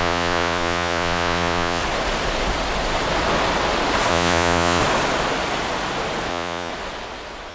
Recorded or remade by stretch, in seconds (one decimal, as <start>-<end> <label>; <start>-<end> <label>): 0.0-1.8 remade; 1.8-4.1 recorded; 4.1-4.8 remade; 4.8-6.3 recorded; 6.3-6.7 remade; 6.7-7.5 recorded